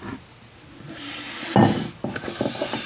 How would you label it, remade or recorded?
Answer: recorded